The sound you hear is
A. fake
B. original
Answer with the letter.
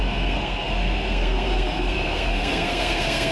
A